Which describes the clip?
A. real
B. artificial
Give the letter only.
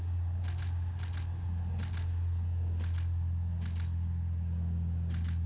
A